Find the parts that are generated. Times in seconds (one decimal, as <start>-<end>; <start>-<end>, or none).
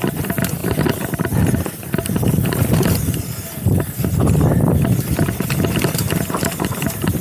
none